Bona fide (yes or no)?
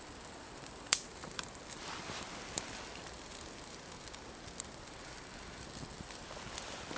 no